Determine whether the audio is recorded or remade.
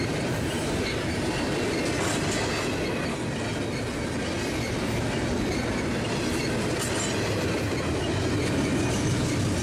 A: recorded